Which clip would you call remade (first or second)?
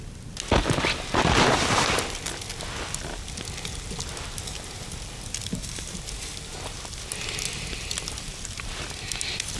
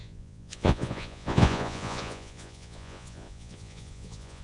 second